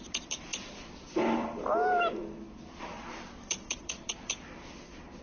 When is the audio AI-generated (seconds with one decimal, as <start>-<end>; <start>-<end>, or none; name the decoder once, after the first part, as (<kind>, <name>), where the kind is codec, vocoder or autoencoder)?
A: 0.0-0.5 (vocoder, BigVGAN v2); 1.1-5.2